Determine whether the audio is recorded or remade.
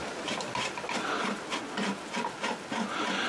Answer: recorded